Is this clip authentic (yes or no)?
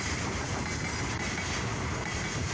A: yes